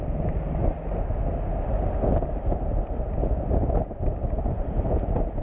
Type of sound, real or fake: real